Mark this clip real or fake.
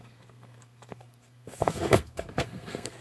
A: fake